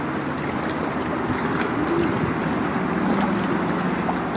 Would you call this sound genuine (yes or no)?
yes